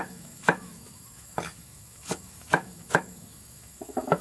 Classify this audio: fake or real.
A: fake